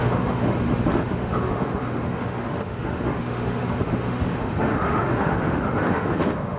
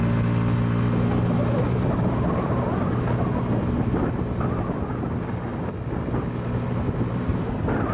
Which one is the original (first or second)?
second